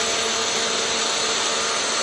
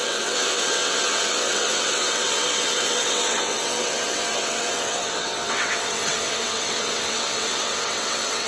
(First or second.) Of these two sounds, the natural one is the first